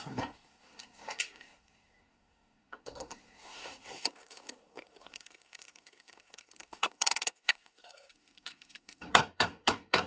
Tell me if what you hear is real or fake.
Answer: fake